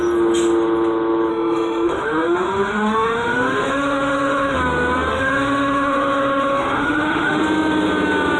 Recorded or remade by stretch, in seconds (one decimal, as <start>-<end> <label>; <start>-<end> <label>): 0.0-1.3 recorded; 1.3-4.6 remade; 4.6-5.1 recorded; 5.1-7.4 remade; 7.4-8.4 recorded